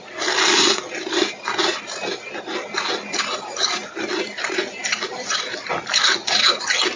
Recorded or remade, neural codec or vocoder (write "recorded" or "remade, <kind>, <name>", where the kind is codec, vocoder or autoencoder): recorded